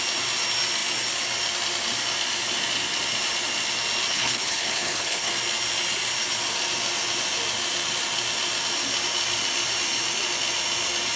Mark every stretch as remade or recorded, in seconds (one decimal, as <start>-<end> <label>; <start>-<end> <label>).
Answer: 0.0-4.1 recorded; 4.1-5.3 remade; 5.3-11.2 recorded